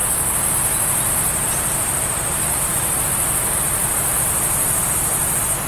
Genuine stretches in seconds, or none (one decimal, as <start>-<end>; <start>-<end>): 0.0-3.8; 5.3-5.7